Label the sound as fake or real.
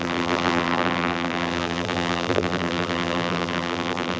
fake